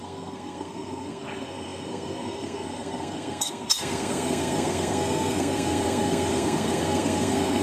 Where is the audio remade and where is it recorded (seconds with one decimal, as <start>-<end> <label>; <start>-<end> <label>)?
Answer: 0.0-7.6 remade